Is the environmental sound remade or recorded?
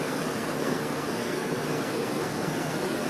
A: remade